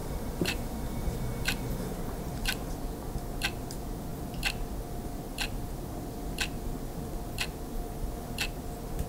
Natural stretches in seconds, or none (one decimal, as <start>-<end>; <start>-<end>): 3.1-9.1